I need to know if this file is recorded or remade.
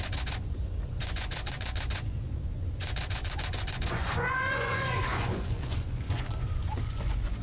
remade